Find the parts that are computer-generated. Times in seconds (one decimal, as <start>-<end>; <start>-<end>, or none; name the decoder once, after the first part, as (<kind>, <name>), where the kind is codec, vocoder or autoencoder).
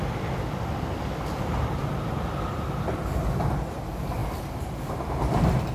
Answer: none